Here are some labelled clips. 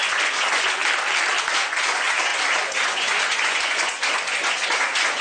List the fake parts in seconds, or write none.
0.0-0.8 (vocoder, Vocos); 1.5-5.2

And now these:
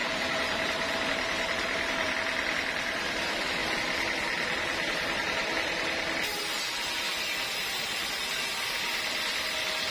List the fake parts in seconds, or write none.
0.0-2.1 (vocoder, BigVGAN v2)